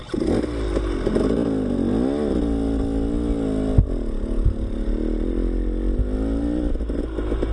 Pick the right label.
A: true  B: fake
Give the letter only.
A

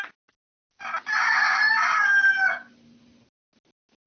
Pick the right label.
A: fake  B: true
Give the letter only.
B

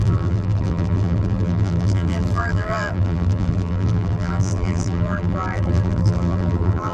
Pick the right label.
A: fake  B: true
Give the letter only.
A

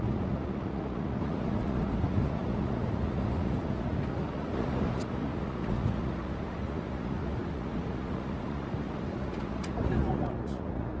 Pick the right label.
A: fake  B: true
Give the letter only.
A